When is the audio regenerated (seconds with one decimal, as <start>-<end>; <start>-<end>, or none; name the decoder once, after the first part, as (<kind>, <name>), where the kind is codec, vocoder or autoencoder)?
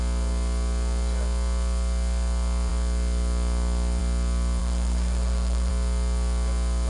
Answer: 4.6-5.7 (codec, SNAC)